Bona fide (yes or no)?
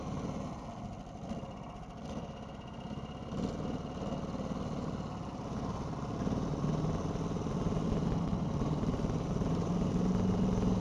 yes